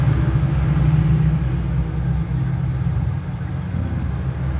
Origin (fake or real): real